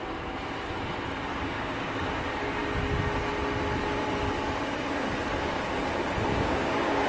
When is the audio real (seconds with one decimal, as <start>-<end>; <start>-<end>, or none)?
0.0-1.3; 2.2-6.3